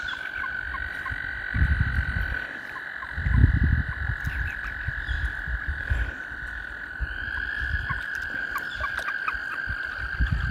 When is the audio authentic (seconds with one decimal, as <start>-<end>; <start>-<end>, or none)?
0.0-10.5